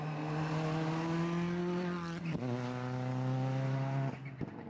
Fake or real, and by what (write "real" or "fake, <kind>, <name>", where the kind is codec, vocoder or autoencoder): real